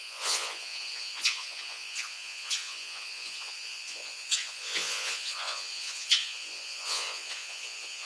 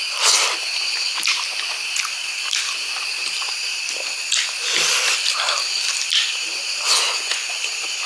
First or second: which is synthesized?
first